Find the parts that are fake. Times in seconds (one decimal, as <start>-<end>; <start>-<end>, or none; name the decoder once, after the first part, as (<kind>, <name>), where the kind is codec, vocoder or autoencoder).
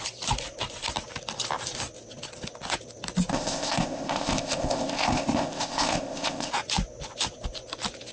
3.3-6.5 (codec, ZipCodec)